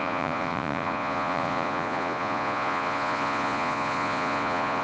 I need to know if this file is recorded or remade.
remade